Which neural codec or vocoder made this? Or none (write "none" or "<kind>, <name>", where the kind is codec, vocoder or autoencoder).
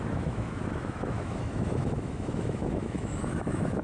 autoencoder, DAC-VAE